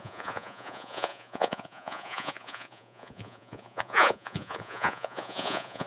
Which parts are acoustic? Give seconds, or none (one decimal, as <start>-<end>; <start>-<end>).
none